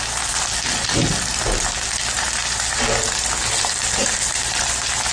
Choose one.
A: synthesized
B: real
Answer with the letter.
B